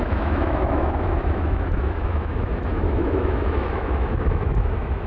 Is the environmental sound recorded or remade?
remade